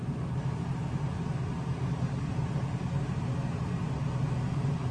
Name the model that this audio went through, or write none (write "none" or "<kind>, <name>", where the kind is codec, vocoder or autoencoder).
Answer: none